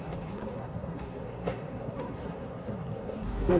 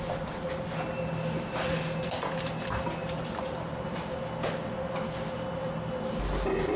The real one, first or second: second